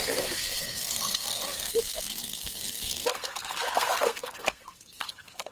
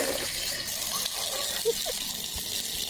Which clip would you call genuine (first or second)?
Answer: second